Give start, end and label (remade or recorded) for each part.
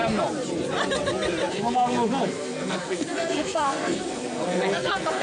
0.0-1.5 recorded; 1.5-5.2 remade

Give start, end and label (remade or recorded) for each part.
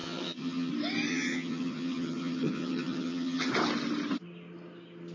0.0-0.7 remade; 0.7-1.1 recorded; 1.1-3.5 remade; 3.5-5.1 recorded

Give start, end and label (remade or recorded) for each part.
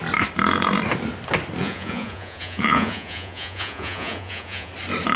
0.0-1.6 recorded; 1.6-4.7 remade; 4.7-5.2 recorded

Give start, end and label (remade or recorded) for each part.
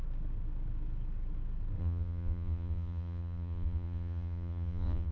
0.0-1.8 recorded; 1.8-5.1 remade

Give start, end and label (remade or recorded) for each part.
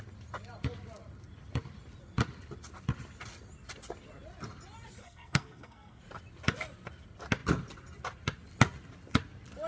0.0-5.0 recorded; 5.0-6.0 remade; 6.0-9.7 recorded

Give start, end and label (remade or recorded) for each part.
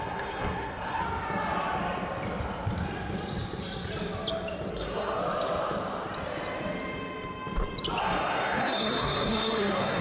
0.0-1.0 remade; 1.0-4.7 recorded; 4.7-5.2 remade; 5.2-8.0 recorded; 8.0-10.0 remade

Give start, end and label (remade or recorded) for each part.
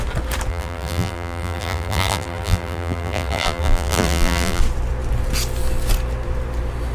0.0-0.5 recorded; 0.5-4.6 remade; 4.6-6.9 recorded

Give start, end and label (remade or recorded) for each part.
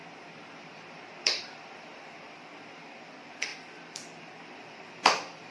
0.0-0.6 recorded; 0.6-5.5 remade